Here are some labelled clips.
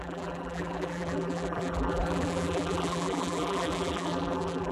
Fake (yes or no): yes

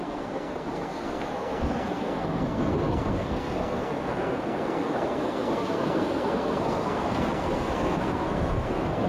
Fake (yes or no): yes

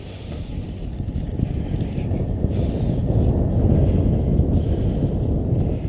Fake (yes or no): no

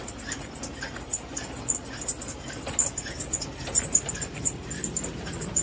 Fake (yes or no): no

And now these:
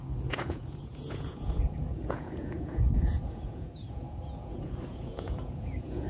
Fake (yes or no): yes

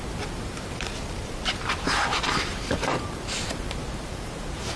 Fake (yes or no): yes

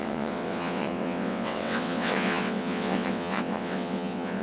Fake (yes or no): yes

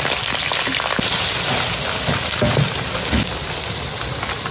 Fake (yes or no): no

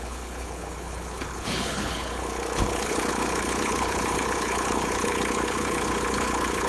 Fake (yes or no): yes